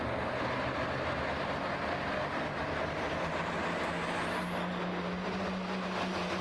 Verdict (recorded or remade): recorded